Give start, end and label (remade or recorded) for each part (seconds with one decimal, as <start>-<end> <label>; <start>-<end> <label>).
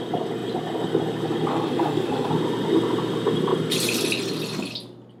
0.0-1.5 recorded; 1.5-2.3 remade; 2.3-5.2 recorded